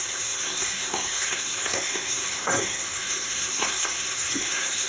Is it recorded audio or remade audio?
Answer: remade